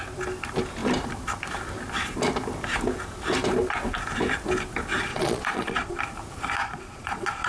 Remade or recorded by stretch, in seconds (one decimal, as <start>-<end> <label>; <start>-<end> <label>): 0.0-5.1 recorded; 5.1-6.0 remade; 6.0-6.6 recorded; 6.6-7.5 remade